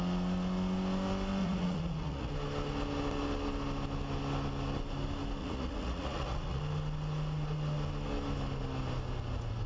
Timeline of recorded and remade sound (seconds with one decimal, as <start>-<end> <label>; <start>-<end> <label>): 0.0-1.4 recorded; 1.4-2.3 remade; 2.3-5.4 recorded; 5.4-6.6 remade; 6.6-9.7 recorded

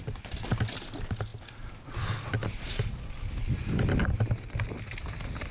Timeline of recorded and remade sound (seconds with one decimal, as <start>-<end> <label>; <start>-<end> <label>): 0.0-5.5 recorded